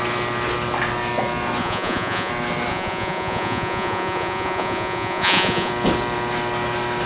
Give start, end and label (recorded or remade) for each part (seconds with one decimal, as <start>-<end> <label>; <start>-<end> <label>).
0.0-1.6 recorded; 1.6-2.3 remade; 2.3-2.7 recorded; 2.7-5.7 remade; 5.7-7.1 recorded